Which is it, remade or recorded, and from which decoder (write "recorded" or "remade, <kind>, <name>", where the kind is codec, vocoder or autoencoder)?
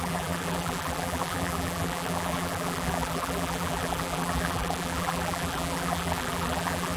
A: remade, vocoder, BigVGAN v2